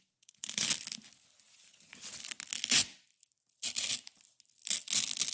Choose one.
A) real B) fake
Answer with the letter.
A